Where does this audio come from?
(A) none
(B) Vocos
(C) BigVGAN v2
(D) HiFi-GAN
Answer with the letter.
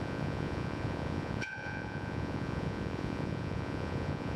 B